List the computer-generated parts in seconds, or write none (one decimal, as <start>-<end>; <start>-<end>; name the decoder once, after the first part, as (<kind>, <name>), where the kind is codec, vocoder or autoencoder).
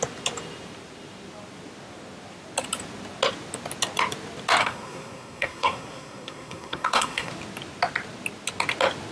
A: 4.6-7.3 (codec, SNAC)